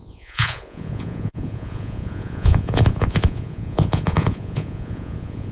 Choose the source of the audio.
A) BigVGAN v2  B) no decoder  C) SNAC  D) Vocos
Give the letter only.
D